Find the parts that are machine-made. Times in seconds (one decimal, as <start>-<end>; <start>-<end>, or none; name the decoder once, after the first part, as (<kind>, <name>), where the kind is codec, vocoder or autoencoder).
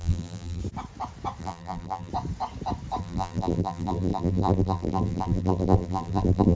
0.0-0.6 (vocoder, BigVGAN v2); 1.4-2.1; 3.0-6.5